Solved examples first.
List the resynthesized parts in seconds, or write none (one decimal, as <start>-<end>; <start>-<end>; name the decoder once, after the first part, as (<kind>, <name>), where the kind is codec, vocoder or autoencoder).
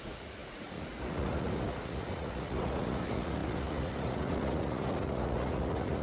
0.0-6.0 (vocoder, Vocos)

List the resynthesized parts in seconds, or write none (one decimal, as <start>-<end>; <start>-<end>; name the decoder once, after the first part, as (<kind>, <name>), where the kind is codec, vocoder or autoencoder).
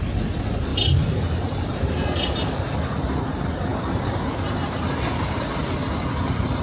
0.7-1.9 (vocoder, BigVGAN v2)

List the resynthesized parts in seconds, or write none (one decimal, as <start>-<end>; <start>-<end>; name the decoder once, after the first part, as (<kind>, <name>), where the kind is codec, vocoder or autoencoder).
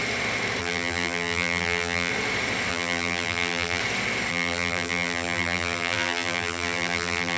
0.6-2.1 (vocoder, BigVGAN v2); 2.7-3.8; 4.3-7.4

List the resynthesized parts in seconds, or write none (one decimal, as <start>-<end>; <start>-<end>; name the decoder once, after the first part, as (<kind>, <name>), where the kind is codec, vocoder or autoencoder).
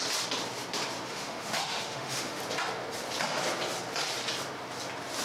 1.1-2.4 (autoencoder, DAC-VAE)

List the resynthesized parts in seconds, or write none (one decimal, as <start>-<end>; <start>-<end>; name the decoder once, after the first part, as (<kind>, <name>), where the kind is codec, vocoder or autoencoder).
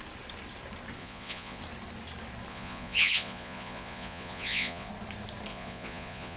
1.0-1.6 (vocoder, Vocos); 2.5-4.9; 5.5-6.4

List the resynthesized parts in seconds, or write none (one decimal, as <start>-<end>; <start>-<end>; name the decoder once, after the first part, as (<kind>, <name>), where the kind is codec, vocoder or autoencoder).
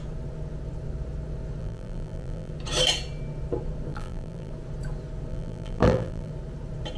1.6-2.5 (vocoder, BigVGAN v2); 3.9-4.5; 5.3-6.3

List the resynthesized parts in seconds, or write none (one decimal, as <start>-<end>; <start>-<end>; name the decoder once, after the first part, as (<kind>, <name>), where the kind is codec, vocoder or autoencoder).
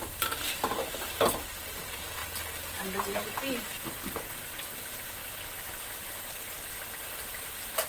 0.0-3.2 (vocoder, BigVGAN v2); 4.3-5.2; 7.1-7.9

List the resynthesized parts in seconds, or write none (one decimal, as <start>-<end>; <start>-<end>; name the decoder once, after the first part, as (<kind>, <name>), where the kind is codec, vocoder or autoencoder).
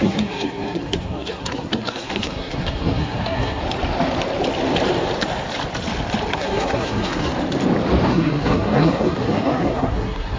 0.0-3.6 (codec, SNAC); 6.3-7.3; 8.1-10.4